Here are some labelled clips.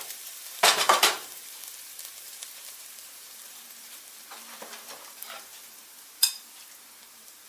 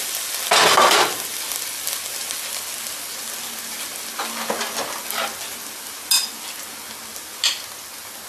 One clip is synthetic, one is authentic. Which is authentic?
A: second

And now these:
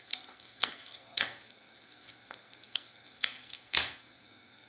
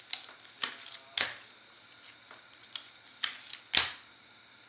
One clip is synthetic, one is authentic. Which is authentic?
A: second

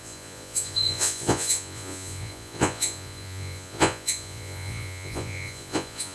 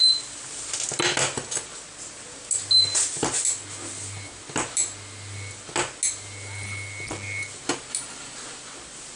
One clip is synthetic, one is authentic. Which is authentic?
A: second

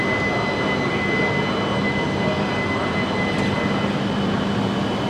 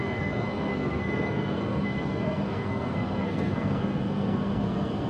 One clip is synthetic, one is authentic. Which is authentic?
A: first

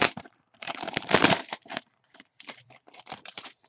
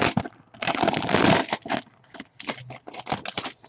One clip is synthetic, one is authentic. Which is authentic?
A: second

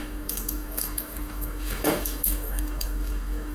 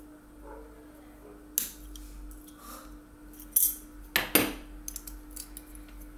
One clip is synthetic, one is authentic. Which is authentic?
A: second